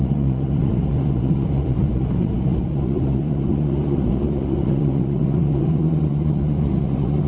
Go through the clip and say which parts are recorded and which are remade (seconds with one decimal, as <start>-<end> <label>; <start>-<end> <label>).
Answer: 0.0-7.3 remade